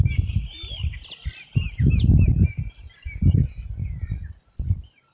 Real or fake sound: real